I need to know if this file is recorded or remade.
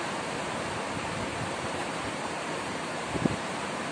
remade